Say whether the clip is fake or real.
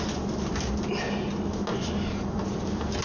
real